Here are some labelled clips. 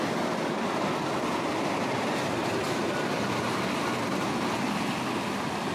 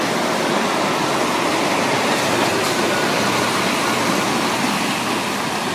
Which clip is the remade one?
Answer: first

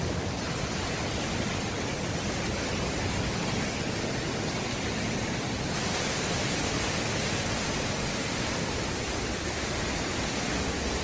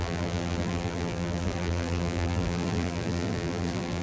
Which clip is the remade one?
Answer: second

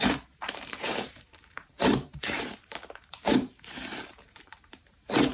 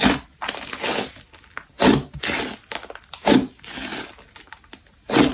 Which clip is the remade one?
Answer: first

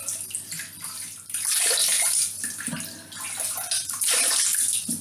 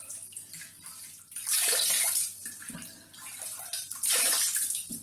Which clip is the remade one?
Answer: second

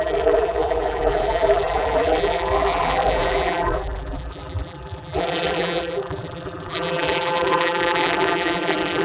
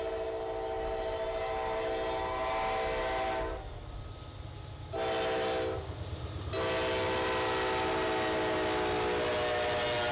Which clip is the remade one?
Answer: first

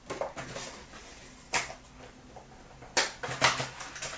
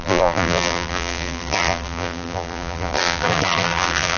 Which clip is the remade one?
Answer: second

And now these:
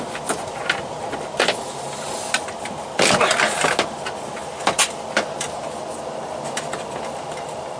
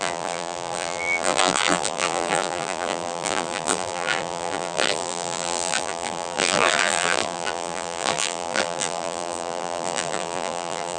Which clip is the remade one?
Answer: second